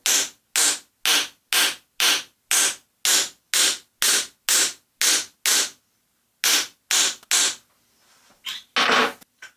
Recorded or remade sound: recorded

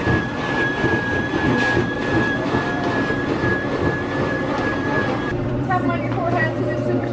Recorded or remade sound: remade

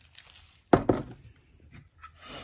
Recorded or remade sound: recorded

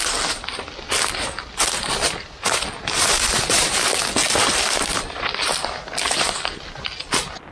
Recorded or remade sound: recorded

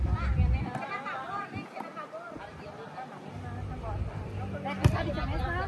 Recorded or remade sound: recorded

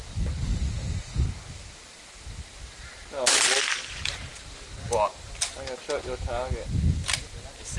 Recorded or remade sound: recorded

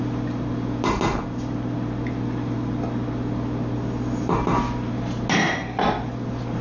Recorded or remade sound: recorded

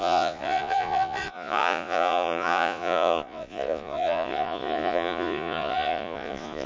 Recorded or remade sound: remade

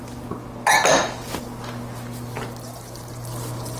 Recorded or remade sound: recorded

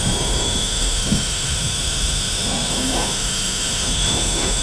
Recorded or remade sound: remade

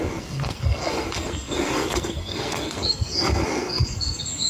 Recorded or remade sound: remade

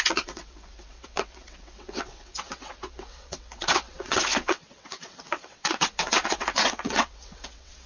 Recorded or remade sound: remade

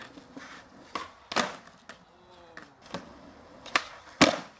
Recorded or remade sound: recorded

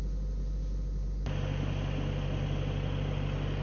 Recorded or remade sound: recorded